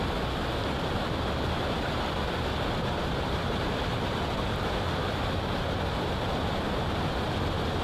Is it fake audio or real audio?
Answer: real